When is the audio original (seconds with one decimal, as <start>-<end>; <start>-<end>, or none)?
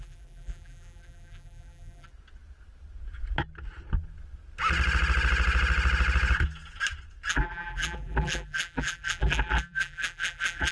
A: 2.1-7.3